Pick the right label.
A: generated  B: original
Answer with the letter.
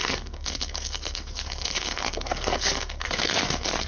A